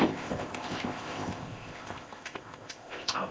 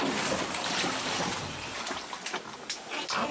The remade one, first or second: first